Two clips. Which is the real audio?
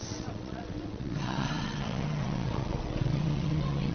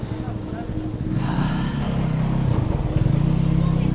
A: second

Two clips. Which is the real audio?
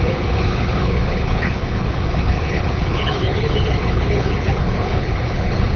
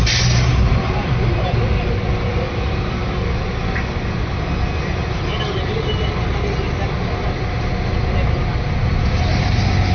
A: second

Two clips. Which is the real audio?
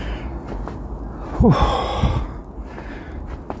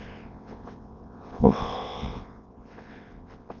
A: first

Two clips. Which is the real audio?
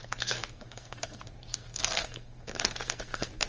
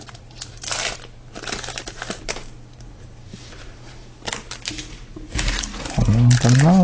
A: second